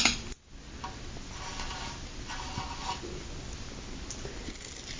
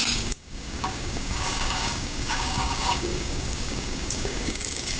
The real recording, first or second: first